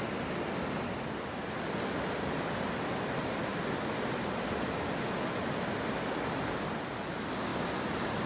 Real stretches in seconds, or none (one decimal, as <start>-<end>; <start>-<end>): 0.0-8.3